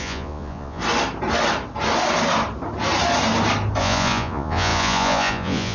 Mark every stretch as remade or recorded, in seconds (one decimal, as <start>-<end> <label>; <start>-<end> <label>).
0.0-0.8 remade; 0.8-3.8 recorded; 3.8-5.7 remade